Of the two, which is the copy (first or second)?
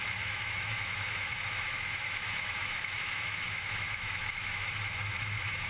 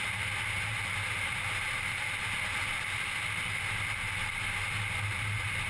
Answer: first